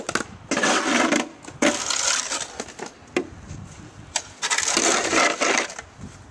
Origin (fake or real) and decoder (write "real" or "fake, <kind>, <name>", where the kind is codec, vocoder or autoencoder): real